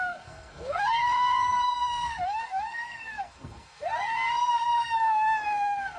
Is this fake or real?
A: fake